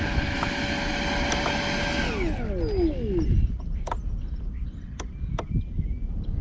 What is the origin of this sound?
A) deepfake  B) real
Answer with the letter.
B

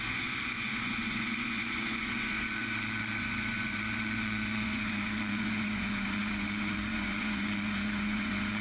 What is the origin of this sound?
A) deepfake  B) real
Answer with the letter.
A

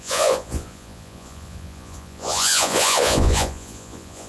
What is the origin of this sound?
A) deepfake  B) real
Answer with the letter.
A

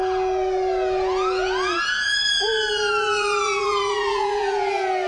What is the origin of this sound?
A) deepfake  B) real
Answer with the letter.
A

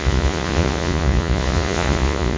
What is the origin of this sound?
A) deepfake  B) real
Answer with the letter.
A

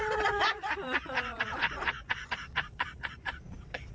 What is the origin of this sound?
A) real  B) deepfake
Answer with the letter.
B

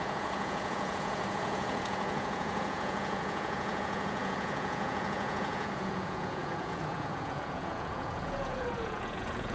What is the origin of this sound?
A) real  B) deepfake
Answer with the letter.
B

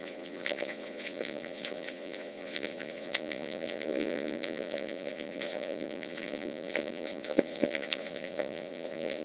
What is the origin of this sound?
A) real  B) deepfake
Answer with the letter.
B